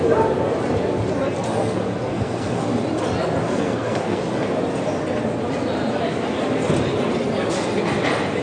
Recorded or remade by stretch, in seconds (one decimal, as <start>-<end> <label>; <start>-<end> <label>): 0.0-2.1 recorded; 2.1-2.6 remade; 2.6-3.4 recorded; 3.4-4.2 remade; 4.2-8.4 recorded

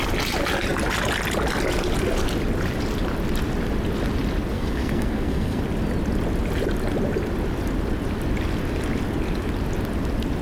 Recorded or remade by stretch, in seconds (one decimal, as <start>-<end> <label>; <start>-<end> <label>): 0.0-4.5 recorded; 4.5-5.6 remade; 5.6-10.4 recorded

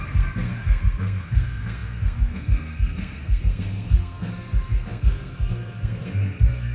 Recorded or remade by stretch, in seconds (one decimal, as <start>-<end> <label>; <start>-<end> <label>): 0.0-6.7 remade